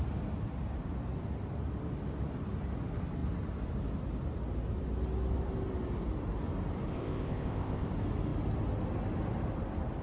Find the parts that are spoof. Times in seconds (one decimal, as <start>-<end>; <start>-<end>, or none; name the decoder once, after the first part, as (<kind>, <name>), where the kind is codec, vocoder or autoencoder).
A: 6.9-7.9 (codec, ZipCodec)